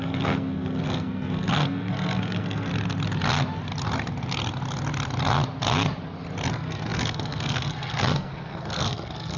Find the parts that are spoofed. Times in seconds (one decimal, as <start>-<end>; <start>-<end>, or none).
0.0-2.7; 6.5-9.4